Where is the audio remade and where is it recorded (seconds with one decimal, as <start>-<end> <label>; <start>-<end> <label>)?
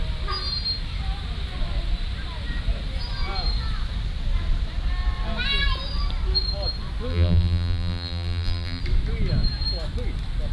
0.0-7.1 recorded; 7.1-8.8 remade; 8.8-10.5 recorded